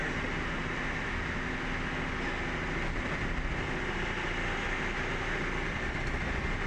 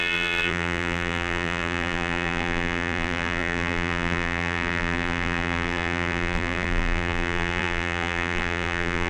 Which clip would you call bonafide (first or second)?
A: first